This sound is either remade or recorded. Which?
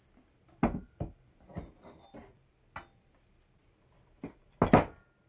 recorded